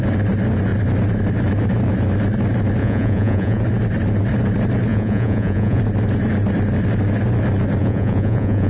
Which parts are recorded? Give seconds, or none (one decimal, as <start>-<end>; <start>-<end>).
0.0-2.8; 3.6-4.9; 5.8-7.8